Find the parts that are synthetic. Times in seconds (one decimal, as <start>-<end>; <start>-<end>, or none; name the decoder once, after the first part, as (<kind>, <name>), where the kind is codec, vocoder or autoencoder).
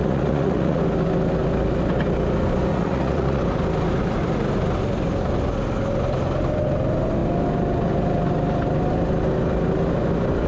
0.0-0.8 (vocoder, Vocos); 2.7-3.4